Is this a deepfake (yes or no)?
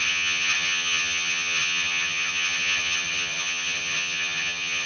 yes